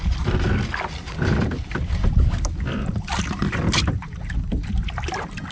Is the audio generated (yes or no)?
no